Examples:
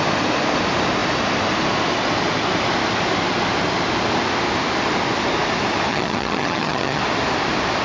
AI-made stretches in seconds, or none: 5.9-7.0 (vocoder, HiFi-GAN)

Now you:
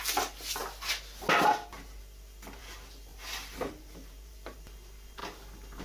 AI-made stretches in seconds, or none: 3.1-4.6 (vocoder, BigVGAN v2)

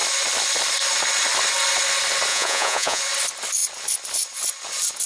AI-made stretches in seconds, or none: 2.3-3.0 (vocoder, Vocos)

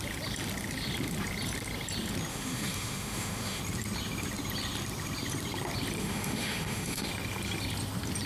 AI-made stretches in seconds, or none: 2.3-3.6 (autoencoder, DAC-VAE); 6.0-7.1

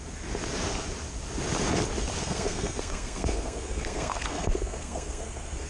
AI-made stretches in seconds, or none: 2.2-5.7 (codec, SNAC)

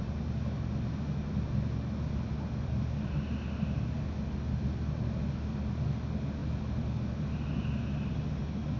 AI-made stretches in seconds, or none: none

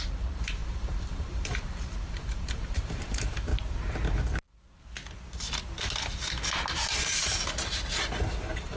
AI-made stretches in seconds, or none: 0.0-3.5 (vocoder, BigVGAN v2); 8.4-8.8